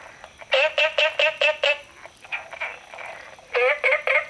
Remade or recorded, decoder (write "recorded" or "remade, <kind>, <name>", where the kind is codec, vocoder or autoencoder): recorded